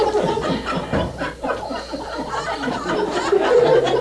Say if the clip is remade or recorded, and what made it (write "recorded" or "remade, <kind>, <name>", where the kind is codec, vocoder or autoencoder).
recorded